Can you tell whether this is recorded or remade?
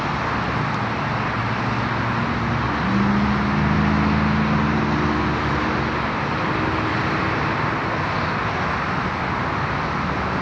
recorded